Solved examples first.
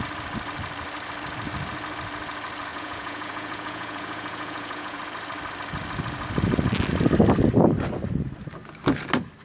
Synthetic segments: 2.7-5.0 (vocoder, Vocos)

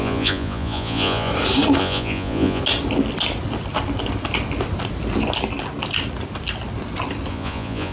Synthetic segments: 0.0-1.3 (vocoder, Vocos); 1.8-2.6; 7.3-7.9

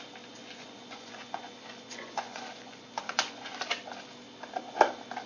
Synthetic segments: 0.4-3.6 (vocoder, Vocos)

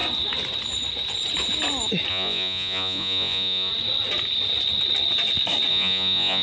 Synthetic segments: 2.1-3.7 (vocoder, Vocos); 5.7-6.4

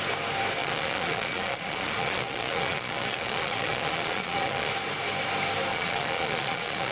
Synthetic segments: 0.6-4.7 (vocoder, Vocos); 5.7-6.9